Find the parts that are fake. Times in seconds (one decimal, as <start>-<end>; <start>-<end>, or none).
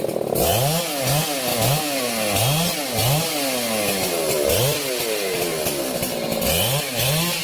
none